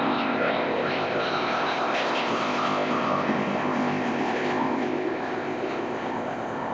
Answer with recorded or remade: remade